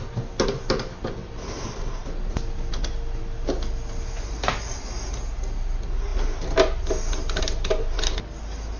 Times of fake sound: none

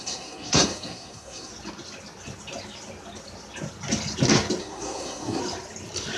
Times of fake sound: 0.0-1.5; 4.6-5.4

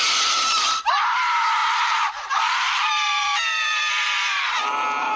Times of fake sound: 1.6-4.7

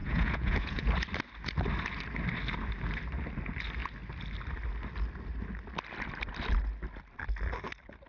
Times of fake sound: 0.0-0.9

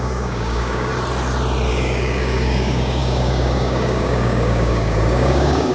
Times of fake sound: 0.0-0.9; 1.7-5.7

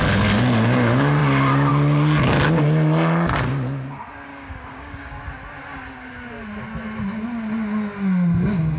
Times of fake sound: 4.3-5.2